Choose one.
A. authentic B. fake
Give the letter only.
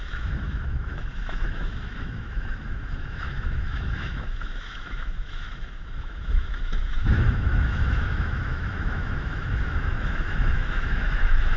B